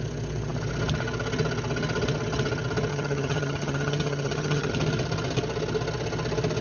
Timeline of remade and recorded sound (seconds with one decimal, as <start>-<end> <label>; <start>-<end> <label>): 0.0-2.9 recorded; 2.9-4.7 remade; 4.7-6.6 recorded